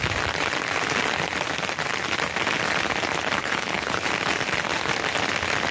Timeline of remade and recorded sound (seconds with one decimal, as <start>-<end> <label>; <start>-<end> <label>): 0.0-3.4 recorded; 3.4-4.1 remade; 4.1-5.7 recorded